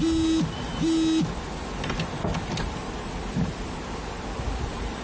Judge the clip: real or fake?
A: real